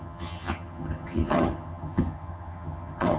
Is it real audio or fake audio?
fake